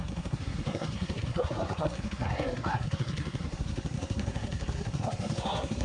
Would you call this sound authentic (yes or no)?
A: no